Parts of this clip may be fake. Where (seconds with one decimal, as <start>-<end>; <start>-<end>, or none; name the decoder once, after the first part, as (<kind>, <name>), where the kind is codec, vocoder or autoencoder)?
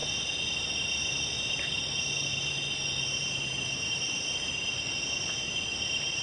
3.2-4.0 (vocoder, BigVGAN v2)